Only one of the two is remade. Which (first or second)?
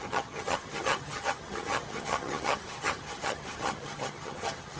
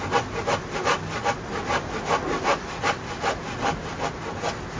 first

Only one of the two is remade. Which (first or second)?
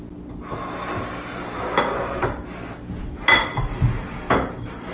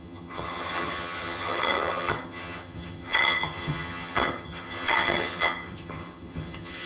second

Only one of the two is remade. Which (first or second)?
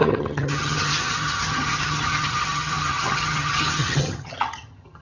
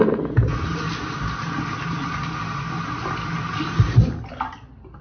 first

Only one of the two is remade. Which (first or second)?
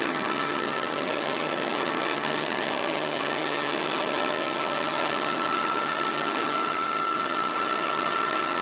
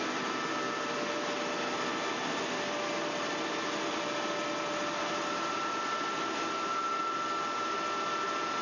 first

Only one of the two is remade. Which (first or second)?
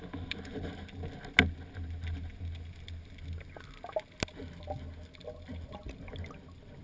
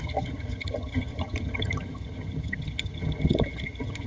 second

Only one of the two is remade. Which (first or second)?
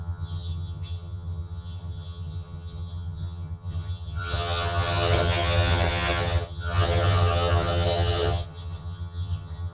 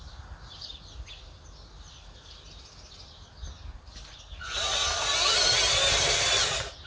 first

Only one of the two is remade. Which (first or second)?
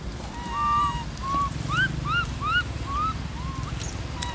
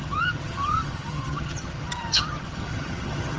second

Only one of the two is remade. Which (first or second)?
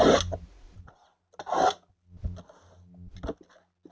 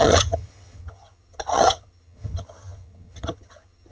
second